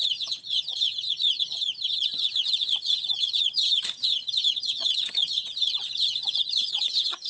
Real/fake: fake